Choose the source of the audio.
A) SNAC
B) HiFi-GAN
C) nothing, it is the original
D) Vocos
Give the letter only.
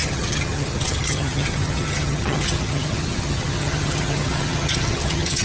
B